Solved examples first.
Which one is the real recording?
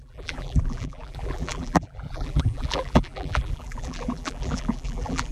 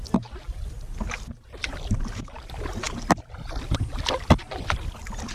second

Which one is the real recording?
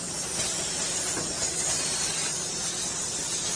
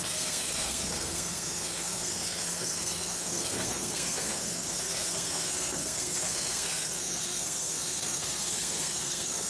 first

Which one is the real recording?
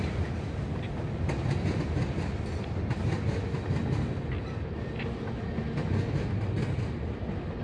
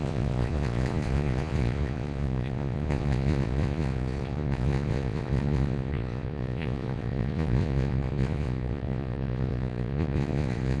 first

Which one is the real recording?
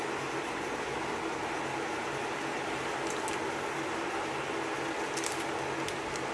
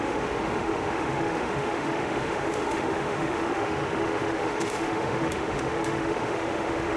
first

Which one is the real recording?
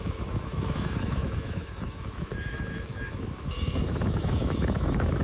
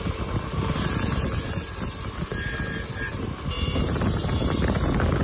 second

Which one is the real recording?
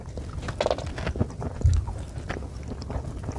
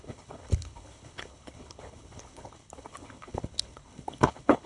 first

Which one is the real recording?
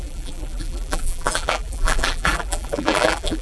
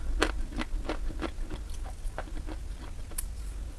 second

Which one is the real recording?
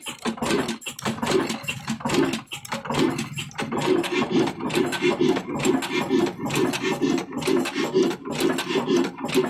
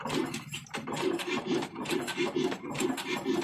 first